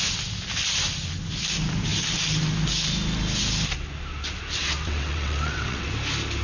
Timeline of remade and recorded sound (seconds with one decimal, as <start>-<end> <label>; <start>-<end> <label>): 0.0-4.6 recorded; 4.6-5.9 remade; 5.9-6.4 recorded